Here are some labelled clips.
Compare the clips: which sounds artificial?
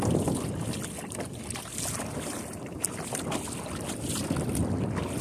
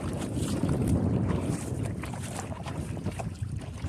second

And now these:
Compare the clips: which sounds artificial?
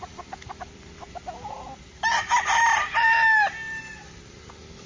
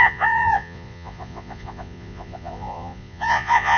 second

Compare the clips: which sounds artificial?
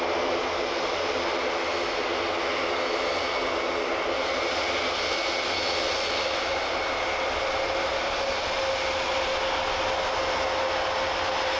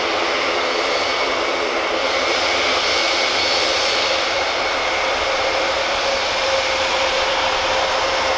second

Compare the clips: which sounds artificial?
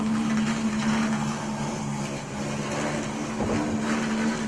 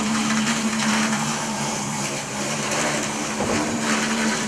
second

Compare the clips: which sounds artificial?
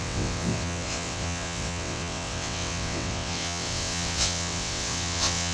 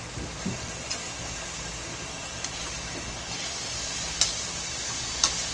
first